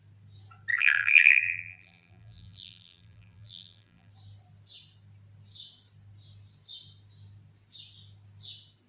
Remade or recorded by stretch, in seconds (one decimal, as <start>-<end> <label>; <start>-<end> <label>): 0.0-0.7 recorded; 0.7-4.1 remade; 4.1-8.9 recorded